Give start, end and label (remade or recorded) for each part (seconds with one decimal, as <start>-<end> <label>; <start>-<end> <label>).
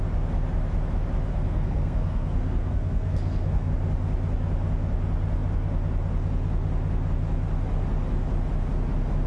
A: 0.0-1.3 recorded; 1.3-3.7 remade; 3.7-9.3 recorded